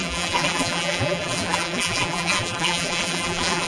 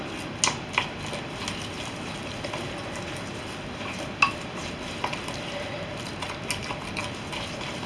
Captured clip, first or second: second